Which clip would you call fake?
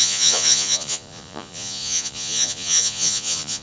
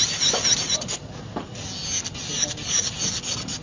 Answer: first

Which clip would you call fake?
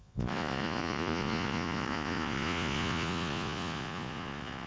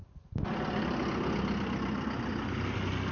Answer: first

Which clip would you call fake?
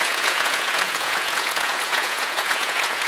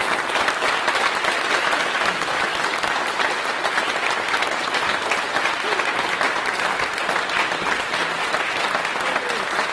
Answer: first